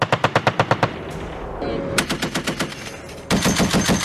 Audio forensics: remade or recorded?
recorded